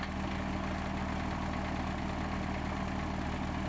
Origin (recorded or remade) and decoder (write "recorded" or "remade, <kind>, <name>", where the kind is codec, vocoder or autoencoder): recorded